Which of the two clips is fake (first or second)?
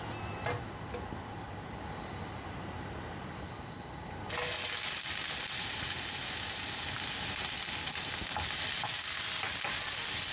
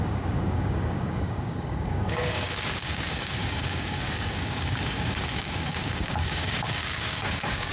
second